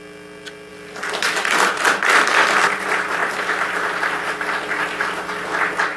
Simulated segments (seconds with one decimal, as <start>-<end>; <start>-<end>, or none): 0.7-1.6; 3.2-6.0